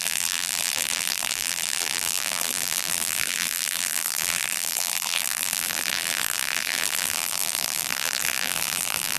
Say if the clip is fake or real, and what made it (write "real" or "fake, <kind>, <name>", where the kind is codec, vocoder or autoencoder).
fake, vocoder, BigVGAN v2